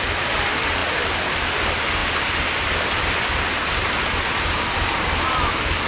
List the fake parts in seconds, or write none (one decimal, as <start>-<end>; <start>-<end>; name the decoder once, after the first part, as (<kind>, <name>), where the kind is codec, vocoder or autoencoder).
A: 0.8-1.4 (vocoder, BigVGAN v2); 2.0-5.5